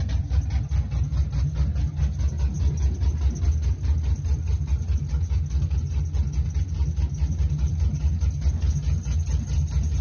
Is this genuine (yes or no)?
yes